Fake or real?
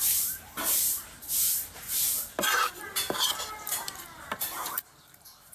fake